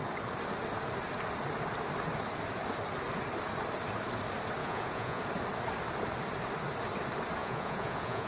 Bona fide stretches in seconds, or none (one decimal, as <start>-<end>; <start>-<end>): 0.0-4.6; 5.2-7.4